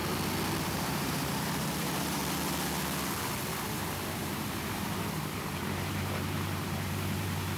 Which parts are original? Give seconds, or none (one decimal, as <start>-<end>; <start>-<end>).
0.0-0.6; 2.2-3.7